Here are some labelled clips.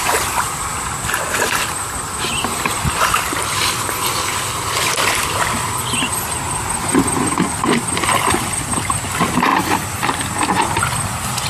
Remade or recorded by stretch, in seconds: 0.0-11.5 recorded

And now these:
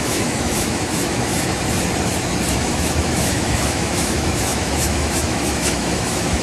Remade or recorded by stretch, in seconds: 0.0-1.5 remade; 1.5-2.5 recorded; 2.5-6.4 remade

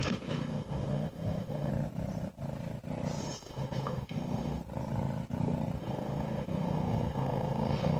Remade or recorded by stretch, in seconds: 0.0-1.7 remade; 1.7-3.2 recorded; 3.2-4.6 remade; 4.6-5.8 recorded; 5.8-8.0 remade

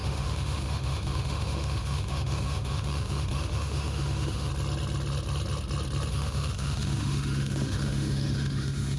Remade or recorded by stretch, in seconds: 0.0-4.5 remade; 4.5-6.1 recorded; 6.1-9.0 remade

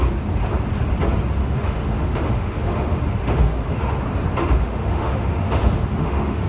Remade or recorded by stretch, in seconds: 0.0-1.4 recorded; 1.4-3.9 remade; 3.9-4.4 recorded; 4.4-6.5 remade

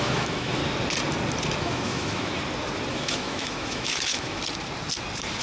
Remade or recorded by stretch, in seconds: 0.0-0.6 remade; 0.6-1.6 recorded; 1.6-2.3 remade; 2.3-2.9 recorded; 2.9-4.4 remade; 4.4-5.4 recorded